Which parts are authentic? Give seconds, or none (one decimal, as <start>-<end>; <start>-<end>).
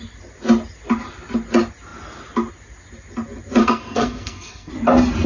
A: 0.0-3.6; 4.7-5.3